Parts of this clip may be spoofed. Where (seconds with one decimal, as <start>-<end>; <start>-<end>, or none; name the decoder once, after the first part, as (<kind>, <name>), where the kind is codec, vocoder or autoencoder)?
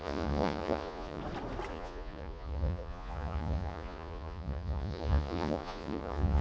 0.0-1.2 (vocoder, Vocos); 1.7-6.4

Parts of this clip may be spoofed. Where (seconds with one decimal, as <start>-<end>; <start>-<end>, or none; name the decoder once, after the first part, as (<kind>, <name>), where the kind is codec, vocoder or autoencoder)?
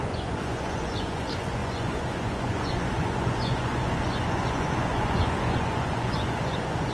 0.0-6.9 (vocoder, Vocos)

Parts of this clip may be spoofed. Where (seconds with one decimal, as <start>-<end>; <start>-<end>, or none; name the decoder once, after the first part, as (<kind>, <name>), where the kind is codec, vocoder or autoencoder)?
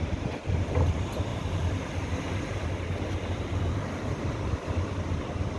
1.3-4.7 (vocoder, BigVGAN v2)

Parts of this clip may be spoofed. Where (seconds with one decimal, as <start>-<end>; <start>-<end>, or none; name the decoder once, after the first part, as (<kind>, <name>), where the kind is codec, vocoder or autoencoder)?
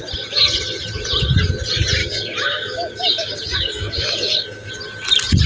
2.0-4.7 (codec, DAC)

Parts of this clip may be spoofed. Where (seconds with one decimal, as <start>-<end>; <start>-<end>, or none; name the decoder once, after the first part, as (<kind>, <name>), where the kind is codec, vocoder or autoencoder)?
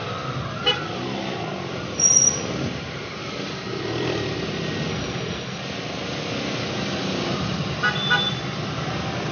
4.9-5.6 (codec, SNAC)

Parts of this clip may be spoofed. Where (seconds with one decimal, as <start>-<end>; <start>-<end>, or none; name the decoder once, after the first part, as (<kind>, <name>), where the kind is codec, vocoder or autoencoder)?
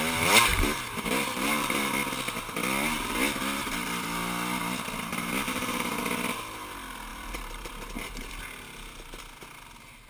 0.5-1.9 (vocoder, BigVGAN v2); 5.1-6.0; 7.1-8.3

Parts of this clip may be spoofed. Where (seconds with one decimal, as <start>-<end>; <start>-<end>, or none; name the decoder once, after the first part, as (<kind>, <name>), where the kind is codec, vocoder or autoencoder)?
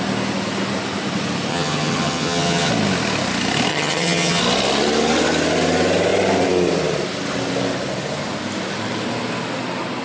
1.5-2.7 (vocoder, HiFi-GAN); 3.7-4.4